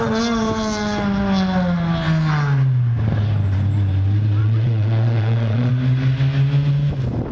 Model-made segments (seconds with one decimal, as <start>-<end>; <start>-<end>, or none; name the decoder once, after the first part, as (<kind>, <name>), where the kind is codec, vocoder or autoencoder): 4.4-5.7 (vocoder, Vocos)